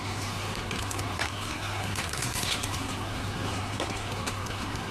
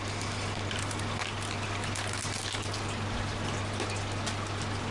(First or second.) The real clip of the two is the second